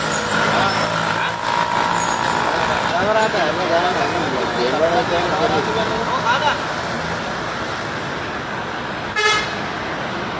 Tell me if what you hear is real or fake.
real